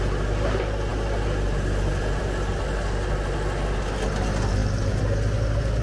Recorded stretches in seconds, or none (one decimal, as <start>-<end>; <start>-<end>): 0.0-5.8